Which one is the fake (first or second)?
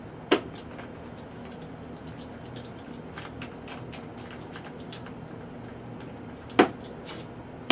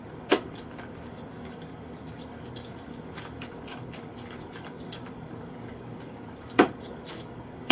second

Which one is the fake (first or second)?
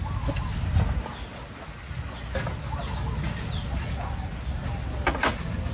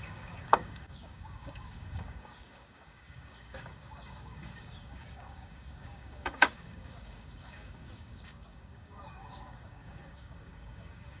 second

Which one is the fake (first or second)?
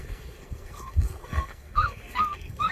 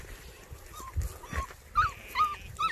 first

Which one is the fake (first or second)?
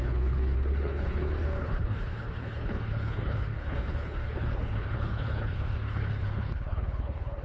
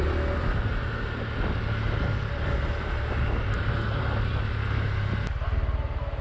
first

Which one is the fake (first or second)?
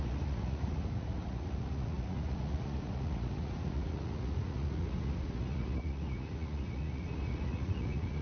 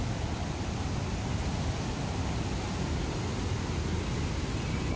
first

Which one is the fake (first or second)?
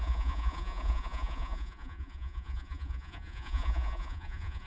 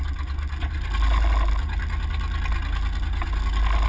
first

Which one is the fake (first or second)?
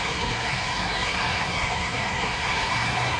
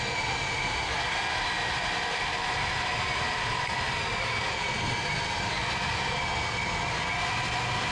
first